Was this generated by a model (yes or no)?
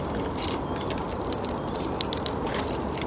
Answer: no